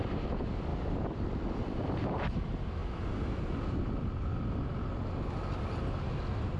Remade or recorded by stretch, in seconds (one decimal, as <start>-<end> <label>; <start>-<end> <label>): 0.0-0.7 recorded; 0.7-2.4 remade; 2.4-2.8 recorded; 2.8-4.7 remade; 4.7-6.6 recorded